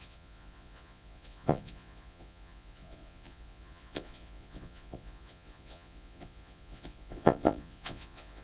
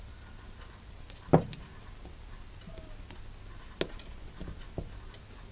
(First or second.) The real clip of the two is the second